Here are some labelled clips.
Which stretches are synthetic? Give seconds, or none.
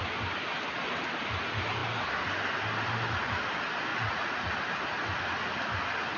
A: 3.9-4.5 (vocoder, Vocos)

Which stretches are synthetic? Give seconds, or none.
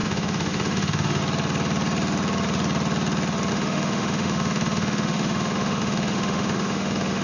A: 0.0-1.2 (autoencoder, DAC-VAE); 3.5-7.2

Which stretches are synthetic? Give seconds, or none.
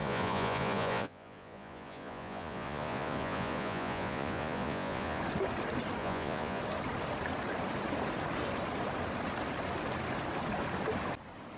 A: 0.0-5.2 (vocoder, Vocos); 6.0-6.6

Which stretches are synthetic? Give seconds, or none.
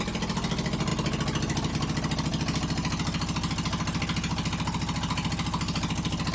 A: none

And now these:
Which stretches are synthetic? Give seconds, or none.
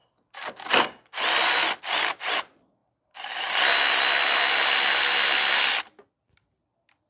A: none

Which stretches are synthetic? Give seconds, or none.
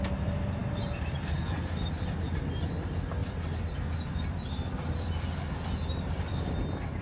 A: 0.6-1.4 (vocoder, BigVGAN v2); 3.2-6.3